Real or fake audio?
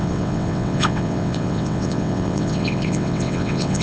fake